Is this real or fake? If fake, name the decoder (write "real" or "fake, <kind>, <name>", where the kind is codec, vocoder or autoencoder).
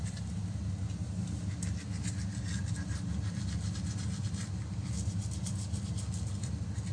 real